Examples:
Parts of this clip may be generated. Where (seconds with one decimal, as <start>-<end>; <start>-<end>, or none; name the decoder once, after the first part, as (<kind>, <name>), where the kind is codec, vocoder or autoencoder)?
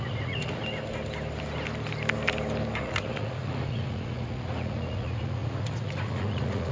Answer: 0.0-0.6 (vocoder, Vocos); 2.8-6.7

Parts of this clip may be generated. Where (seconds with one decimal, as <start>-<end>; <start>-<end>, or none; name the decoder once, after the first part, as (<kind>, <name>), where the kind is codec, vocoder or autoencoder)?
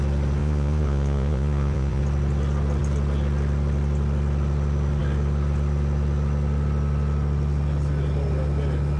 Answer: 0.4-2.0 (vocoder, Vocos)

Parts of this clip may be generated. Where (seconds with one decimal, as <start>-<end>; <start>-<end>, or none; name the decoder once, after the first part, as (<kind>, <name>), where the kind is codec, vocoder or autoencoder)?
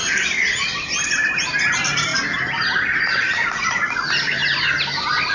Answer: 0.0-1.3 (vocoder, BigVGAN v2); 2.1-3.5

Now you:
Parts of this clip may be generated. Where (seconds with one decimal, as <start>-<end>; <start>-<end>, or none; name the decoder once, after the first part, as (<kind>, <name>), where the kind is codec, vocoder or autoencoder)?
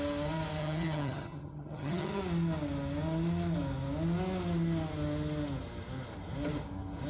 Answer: 0.6-2.2 (vocoder, HiFi-GAN)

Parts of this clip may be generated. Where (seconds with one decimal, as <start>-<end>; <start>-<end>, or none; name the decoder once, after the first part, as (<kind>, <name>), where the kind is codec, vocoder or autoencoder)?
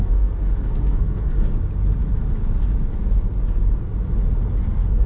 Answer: 0.0-1.5 (codec, SNAC); 4.6-5.1